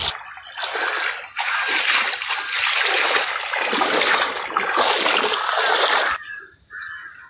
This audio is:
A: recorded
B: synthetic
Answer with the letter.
A